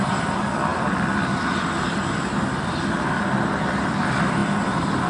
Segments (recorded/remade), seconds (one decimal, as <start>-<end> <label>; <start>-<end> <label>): 0.0-5.1 recorded